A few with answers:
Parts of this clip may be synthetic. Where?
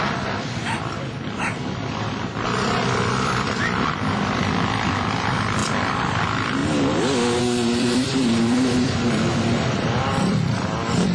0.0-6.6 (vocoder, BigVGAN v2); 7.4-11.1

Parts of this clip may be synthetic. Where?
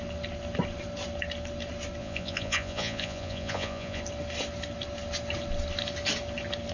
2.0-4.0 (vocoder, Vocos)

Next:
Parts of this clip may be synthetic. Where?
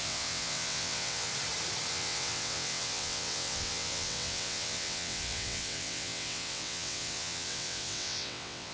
0.0-1.3 (vocoder, WaveNeXt); 1.9-8.7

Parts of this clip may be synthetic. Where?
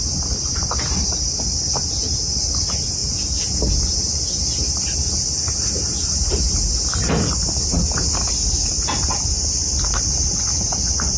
none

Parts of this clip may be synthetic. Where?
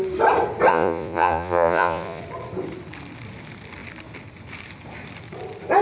0.7-2.2 (vocoder, Vocos)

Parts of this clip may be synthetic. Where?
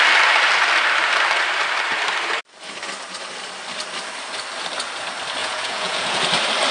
5.4-6.2 (vocoder, Vocos)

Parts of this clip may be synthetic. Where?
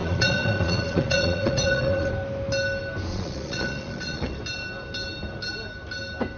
0.0-2.1 (vocoder, Vocos); 3.1-4.4